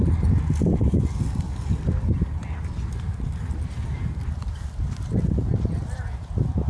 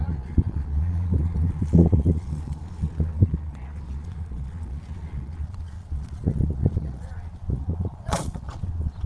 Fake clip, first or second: second